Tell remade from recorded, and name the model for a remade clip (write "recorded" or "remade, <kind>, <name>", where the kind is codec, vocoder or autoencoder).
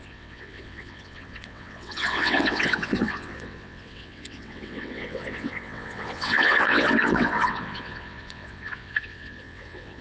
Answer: remade, vocoder, WaveNeXt